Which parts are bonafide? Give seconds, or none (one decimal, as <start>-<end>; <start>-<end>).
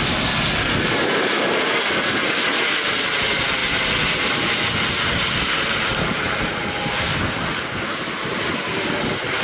0.0-9.4